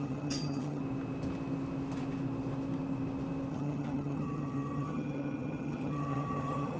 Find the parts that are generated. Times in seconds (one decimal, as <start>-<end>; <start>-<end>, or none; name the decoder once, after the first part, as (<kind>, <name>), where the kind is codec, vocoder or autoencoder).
0.0-0.8 (vocoder, HiFi-GAN); 3.5-6.8